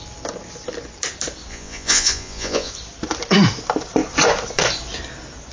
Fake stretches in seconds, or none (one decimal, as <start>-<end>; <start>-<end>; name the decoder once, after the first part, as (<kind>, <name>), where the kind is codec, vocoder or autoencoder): 1.5-2.7 (vocoder, Vocos)